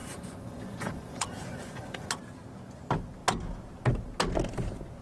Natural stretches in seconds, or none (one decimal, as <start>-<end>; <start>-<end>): 2.1-5.0